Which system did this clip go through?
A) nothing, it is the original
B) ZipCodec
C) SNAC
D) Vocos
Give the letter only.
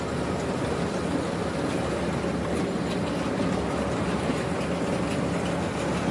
A